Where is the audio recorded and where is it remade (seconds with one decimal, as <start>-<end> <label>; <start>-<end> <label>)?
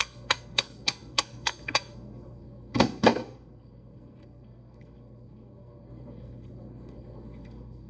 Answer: 0.0-7.9 remade